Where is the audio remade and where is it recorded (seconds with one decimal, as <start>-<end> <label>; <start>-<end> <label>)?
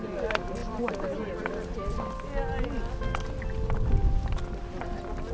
0.0-5.3 recorded